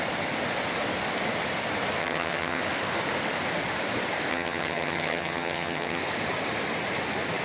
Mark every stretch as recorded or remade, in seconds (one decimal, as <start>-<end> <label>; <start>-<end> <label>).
0.0-2.0 recorded; 2.0-2.6 remade; 2.6-4.3 recorded; 4.3-6.0 remade; 6.0-7.4 recorded